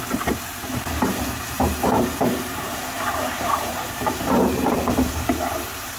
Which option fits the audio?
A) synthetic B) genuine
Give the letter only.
A